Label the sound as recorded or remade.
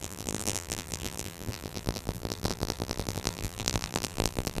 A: remade